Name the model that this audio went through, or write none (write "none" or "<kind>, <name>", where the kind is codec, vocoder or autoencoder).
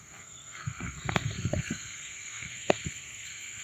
codec, SNAC